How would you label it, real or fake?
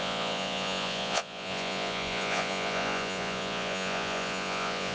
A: fake